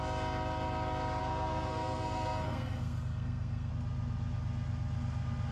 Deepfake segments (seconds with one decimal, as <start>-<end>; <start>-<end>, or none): 1.2-3.7